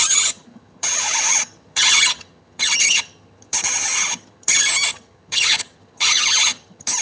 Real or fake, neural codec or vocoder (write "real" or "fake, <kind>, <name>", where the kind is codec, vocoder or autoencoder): fake, vocoder, HiFi-GAN